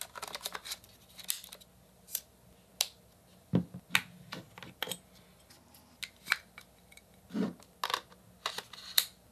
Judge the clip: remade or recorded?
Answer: recorded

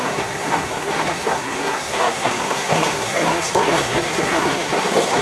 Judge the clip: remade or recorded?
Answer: remade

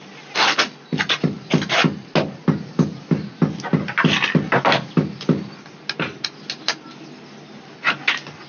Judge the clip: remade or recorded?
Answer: recorded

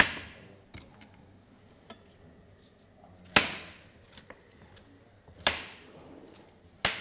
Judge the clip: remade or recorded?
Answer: recorded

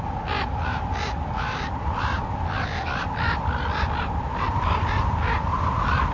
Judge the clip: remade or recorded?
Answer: recorded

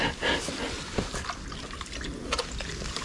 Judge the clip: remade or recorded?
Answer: recorded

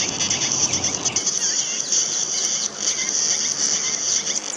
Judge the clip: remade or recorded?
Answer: recorded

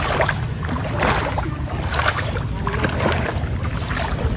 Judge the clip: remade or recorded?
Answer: recorded